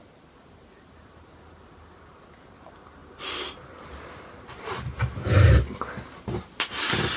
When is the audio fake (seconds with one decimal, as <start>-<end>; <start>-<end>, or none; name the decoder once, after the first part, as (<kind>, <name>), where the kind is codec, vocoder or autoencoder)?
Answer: 3.0-6.6 (vocoder, BigVGAN v2)